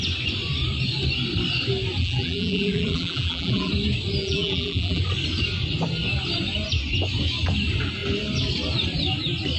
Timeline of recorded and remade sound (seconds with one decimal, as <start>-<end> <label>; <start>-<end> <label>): 0.0-2.0 recorded; 2.0-3.7 remade; 3.7-4.2 recorded; 4.2-5.0 remade; 5.0-9.6 recorded